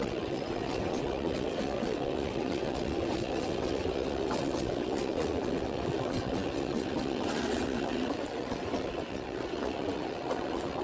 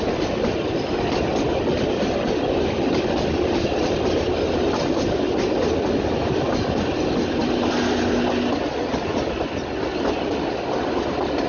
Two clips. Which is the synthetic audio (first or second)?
first